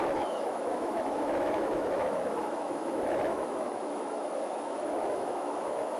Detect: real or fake fake